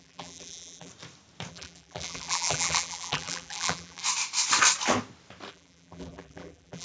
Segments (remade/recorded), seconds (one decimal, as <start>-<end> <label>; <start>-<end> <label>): 0.0-0.9 remade; 0.9-1.5 recorded; 1.5-4.0 remade; 4.0-5.5 recorded; 5.5-6.8 remade